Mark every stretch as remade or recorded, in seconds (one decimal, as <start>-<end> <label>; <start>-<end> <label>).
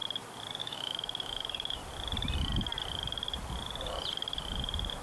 0.0-0.6 recorded; 0.6-1.8 remade; 1.8-5.0 recorded